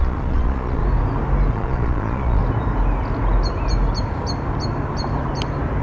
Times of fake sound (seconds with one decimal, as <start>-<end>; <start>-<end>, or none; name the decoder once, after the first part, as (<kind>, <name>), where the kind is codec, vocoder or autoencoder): 0.0-0.8 (vocoder, Vocos); 1.5-2.4